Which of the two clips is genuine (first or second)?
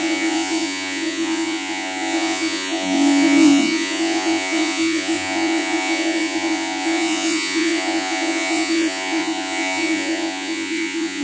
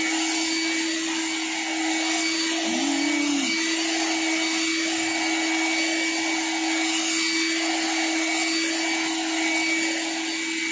second